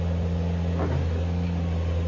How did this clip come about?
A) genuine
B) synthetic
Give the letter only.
A